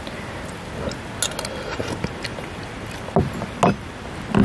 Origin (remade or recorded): recorded